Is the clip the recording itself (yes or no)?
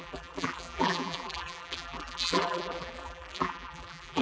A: no